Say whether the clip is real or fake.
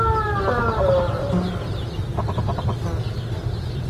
real